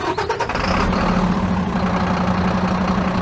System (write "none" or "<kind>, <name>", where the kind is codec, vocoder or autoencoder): none